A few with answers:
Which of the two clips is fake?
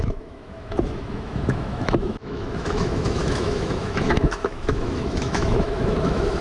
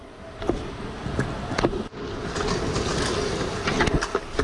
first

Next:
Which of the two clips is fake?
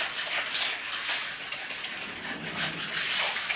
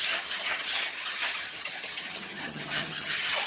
second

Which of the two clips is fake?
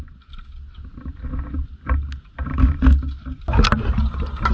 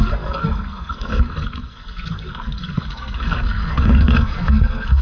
second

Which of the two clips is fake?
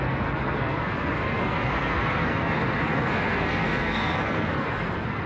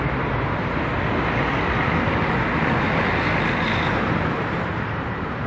first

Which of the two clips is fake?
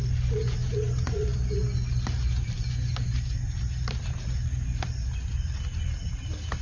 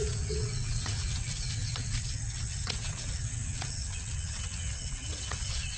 second